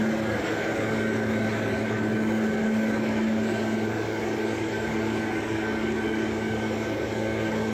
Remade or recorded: remade